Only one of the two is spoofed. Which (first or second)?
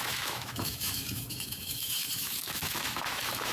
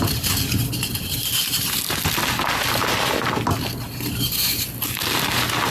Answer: first